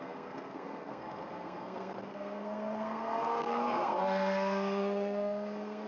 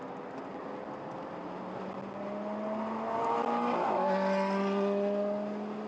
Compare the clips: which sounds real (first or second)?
second